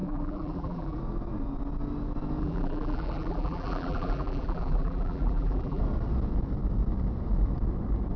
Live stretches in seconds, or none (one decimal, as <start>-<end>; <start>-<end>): 1.0-2.4; 5.8-8.2